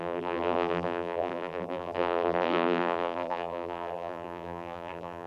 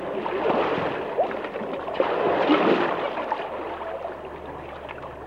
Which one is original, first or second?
second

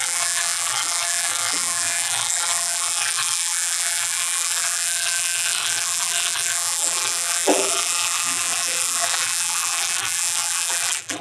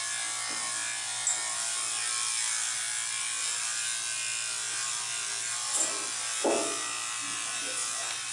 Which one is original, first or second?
second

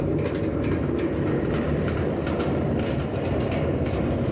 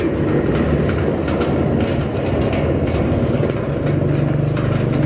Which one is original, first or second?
second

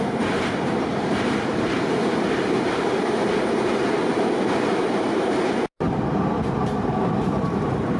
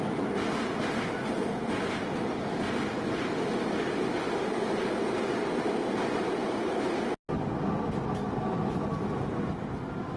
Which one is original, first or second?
second